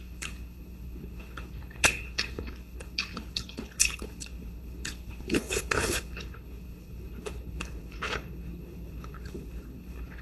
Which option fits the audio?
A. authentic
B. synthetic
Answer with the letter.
B